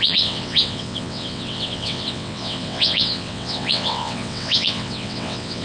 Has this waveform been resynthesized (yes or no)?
yes